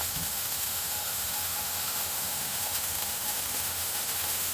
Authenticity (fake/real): fake